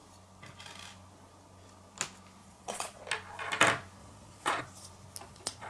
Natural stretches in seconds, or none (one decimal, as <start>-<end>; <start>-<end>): 0.0-2.4; 3.0-4.0; 4.6-5.2